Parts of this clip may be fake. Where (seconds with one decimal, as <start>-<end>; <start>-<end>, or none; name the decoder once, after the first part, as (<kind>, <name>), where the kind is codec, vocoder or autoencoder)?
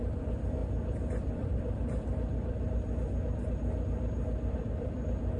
0.0-5.4 (vocoder, BigVGAN v2)